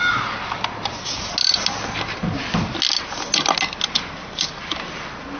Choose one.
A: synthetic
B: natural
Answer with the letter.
B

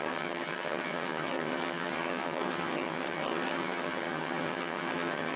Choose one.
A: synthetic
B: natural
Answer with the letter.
A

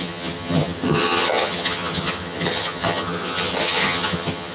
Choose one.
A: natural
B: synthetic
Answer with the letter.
B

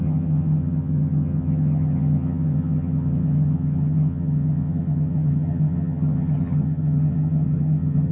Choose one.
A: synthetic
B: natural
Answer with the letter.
A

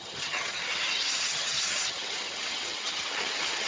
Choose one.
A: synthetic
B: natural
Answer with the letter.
A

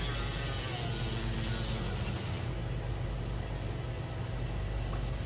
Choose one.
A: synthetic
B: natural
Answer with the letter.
B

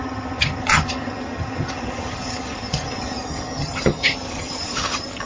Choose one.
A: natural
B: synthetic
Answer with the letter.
B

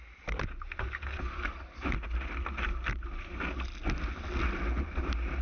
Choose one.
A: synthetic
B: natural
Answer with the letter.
B